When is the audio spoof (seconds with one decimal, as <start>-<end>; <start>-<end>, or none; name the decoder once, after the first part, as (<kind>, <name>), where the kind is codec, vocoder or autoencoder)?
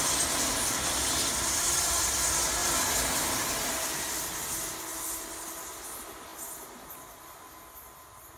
none